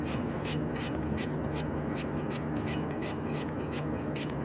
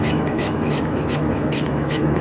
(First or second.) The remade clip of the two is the second